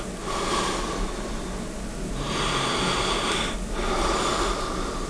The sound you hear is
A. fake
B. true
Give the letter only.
B